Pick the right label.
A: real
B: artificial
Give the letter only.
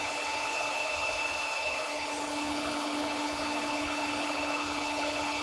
B